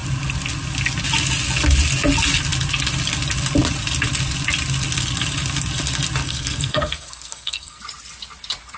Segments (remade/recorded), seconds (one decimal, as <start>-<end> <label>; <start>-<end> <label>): 0.0-6.2 recorded; 6.2-7.8 remade; 7.8-8.8 recorded